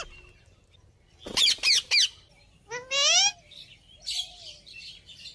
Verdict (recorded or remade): recorded